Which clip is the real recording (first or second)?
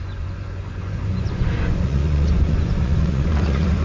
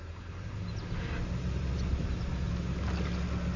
second